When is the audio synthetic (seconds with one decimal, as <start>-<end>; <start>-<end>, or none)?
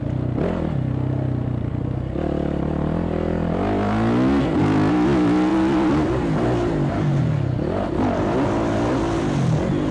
none